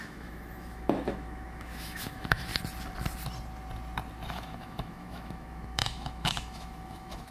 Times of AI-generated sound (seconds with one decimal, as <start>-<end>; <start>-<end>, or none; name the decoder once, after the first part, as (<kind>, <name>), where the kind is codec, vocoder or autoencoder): 0.0-2.5 (autoencoder, DAC-VAE); 4.3-7.3